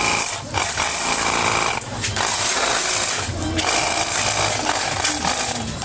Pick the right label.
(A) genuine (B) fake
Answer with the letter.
A